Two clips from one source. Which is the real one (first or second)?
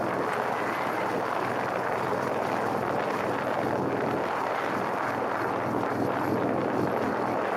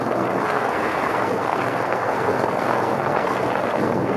first